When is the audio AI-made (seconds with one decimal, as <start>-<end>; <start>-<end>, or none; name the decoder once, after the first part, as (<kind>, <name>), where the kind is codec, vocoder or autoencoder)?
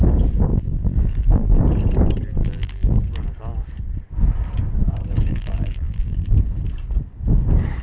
0.5-1.6 (vocoder, BigVGAN v2); 2.4-3.0; 5.3-6.4